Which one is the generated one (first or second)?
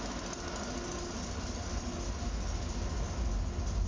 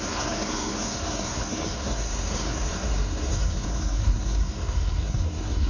second